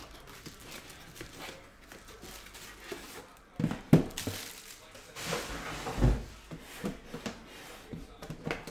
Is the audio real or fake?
real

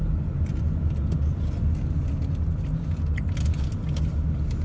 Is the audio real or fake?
real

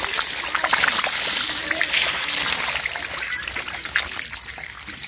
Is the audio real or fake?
real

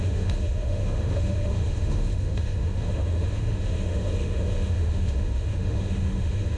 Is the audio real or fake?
fake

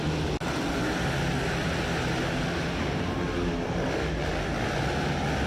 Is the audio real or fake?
real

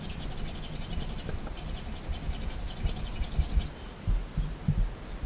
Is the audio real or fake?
real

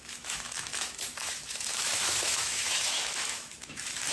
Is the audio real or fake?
fake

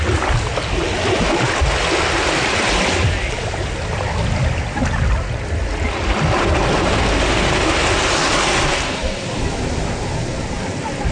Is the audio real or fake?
real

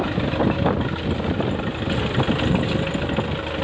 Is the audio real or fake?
real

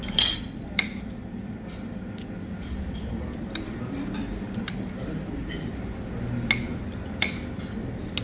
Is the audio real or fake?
real